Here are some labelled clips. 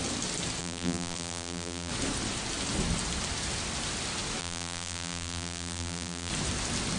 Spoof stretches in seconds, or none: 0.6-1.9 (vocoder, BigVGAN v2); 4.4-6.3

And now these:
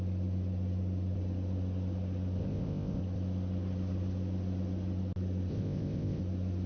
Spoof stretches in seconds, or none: 2.4-3.0 (codec, ZipCodec); 5.5-6.2

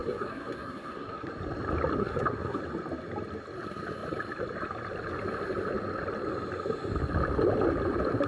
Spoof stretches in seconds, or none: 0.0-1.3 (codec, SNAC); 2.0-2.6